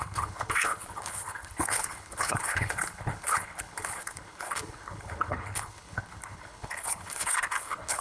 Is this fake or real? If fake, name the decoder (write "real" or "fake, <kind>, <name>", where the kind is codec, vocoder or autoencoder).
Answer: fake, codec, HILCodec